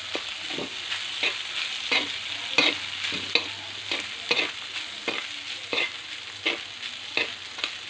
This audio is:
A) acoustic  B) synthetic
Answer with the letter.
A